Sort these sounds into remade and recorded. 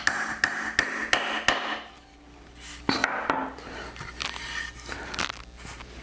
recorded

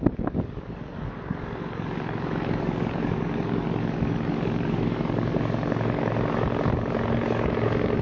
remade